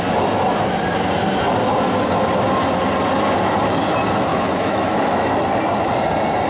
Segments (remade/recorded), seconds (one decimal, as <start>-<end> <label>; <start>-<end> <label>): 0.0-4.3 recorded; 4.3-5.3 remade; 5.3-6.5 recorded